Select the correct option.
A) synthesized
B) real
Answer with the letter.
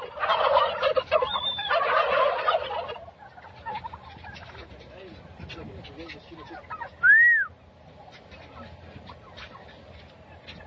B